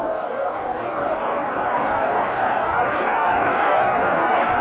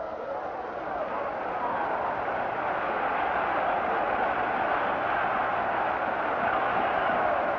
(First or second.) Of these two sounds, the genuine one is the second